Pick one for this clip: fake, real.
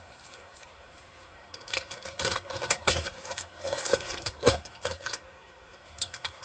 fake